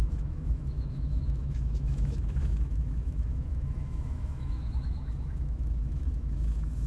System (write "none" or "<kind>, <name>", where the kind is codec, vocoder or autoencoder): autoencoder, DAC-VAE